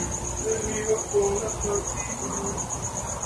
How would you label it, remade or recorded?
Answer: recorded